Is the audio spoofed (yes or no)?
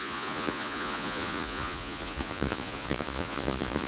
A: yes